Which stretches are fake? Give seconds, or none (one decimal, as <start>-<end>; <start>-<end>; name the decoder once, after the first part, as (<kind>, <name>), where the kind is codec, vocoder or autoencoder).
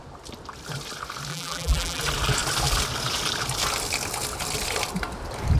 1.3-2.0 (vocoder, BigVGAN v2)